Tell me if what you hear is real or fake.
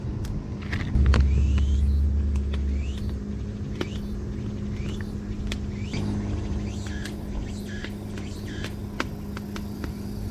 real